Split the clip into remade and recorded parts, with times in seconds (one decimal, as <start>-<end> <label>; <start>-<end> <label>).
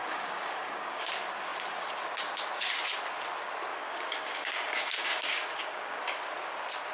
0.0-1.1 remade; 1.1-3.7 recorded; 3.7-6.0 remade; 6.0-6.9 recorded